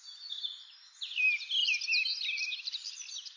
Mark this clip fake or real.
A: real